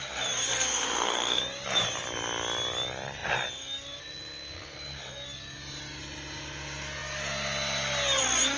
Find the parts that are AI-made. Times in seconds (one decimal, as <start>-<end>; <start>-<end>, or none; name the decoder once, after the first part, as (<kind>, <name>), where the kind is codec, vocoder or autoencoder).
0.5-1.4 (codec, SNAC)